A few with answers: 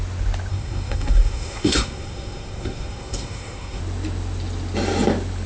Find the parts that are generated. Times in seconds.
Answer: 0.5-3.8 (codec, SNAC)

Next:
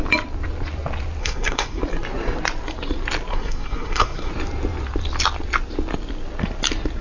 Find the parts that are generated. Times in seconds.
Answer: 1.2-1.8 (codec, SNAC); 3.3-4.3

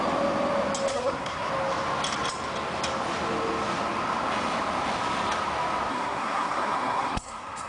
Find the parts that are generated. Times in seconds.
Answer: 0.9-1.5 (codec, SNAC); 5.9-7.7

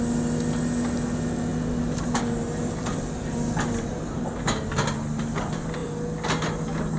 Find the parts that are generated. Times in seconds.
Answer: none

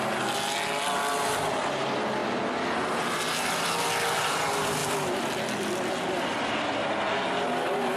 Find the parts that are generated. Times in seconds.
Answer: none

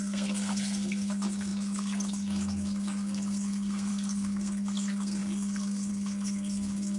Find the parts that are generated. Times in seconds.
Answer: 0.0-7.0 (codec, SNAC)

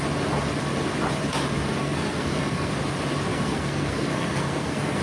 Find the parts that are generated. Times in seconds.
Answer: 1.8-2.7 (codec, SNAC); 3.3-5.0

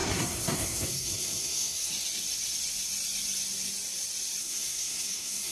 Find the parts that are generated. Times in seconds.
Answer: 0.0-1.9 (codec, SNAC); 4.4-5.5